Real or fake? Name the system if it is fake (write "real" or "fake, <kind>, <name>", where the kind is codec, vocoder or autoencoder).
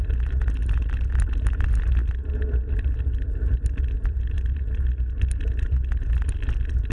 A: real